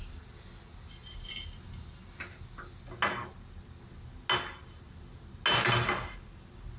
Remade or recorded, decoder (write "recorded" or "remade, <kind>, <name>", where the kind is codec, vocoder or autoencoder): recorded